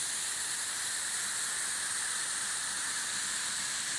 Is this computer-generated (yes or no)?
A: no